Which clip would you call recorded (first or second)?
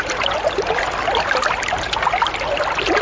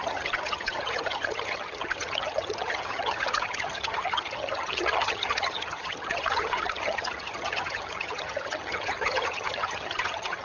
first